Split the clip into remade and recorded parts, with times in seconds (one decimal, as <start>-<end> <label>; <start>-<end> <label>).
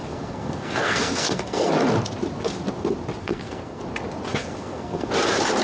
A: 0.0-1.7 remade; 1.7-3.2 recorded; 3.2-3.8 remade; 3.8-4.3 recorded; 4.3-5.1 remade; 5.1-5.6 recorded